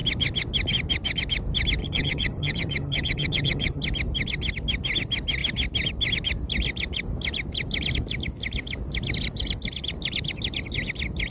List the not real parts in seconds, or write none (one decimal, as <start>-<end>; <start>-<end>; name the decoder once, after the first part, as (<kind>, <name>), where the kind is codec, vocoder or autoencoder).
1.8-3.8 (vocoder, HiFi-GAN)